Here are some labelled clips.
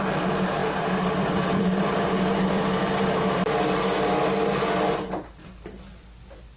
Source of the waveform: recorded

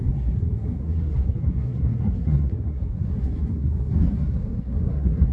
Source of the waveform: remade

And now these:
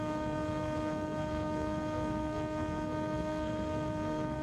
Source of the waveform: remade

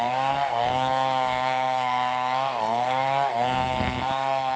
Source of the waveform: remade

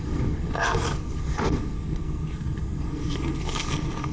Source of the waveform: remade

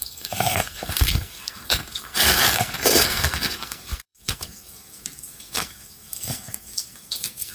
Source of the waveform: remade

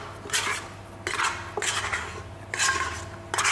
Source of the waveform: recorded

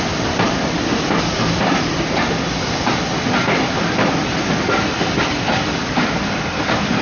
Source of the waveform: recorded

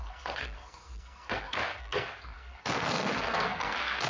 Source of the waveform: remade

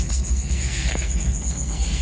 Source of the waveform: remade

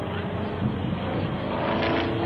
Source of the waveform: recorded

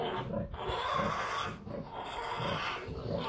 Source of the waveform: recorded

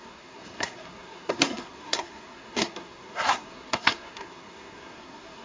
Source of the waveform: remade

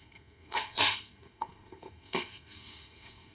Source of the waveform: remade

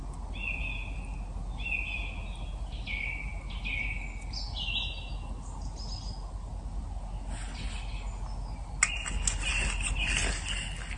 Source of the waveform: recorded